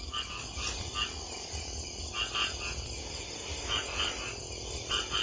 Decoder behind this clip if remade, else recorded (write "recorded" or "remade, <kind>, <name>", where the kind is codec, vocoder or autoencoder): recorded